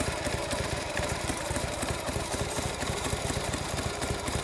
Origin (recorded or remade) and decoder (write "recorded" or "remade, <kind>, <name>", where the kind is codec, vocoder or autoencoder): remade, vocoder, BigVGAN v2